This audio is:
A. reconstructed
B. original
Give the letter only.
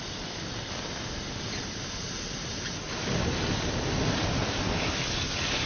A